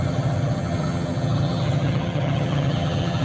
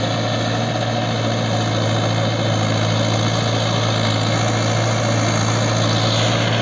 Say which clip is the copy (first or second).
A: first